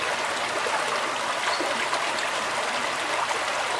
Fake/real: real